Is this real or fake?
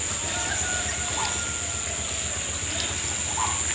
real